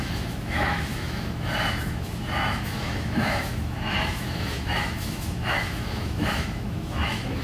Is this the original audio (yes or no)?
no